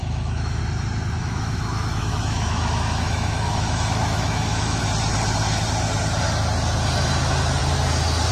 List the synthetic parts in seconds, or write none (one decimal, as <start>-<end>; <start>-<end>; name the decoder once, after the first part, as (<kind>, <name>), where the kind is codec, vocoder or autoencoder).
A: 0.0-0.6 (autoencoder, DAC-VAE); 1.2-4.8